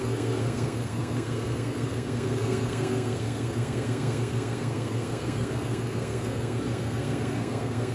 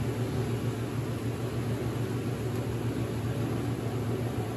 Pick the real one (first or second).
second